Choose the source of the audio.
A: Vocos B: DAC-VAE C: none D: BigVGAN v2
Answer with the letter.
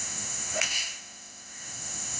B